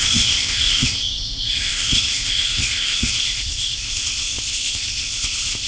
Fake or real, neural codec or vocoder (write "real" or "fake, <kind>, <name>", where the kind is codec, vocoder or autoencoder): fake, codec, ZipCodec